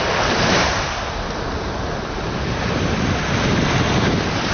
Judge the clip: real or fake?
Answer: real